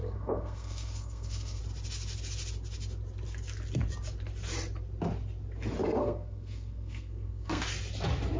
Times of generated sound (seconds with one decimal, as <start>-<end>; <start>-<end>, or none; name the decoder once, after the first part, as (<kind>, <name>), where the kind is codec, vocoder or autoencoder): 0.0-1.6 (codec, SNAC); 6.0-7.6

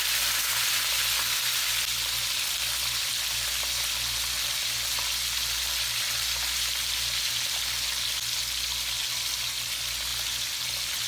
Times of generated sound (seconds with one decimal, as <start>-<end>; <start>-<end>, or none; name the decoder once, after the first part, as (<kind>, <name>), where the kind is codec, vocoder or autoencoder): none

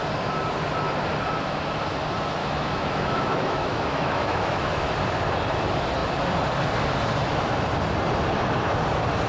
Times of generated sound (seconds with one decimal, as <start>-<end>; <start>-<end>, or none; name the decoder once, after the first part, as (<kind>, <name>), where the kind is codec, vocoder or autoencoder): 2.4-4.8 (autoencoder, DAC-VAE)

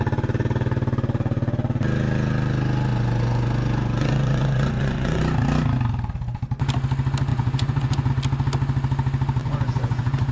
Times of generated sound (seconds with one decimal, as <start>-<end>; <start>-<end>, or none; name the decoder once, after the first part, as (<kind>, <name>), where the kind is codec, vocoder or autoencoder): 2.9-5.2 (vocoder, Vocos); 7.3-8.1; 9.4-10.3

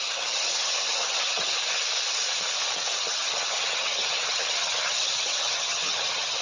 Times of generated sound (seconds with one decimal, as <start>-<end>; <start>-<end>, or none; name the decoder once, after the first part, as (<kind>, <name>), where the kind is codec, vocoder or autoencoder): 0.0-1.6 (vocoder, HiFi-GAN); 3.0-6.4